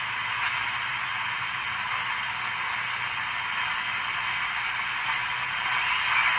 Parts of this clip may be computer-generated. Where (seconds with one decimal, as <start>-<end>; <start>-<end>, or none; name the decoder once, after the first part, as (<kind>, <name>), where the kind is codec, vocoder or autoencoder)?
none